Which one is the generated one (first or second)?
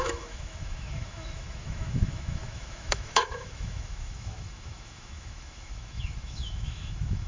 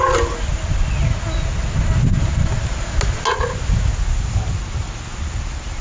first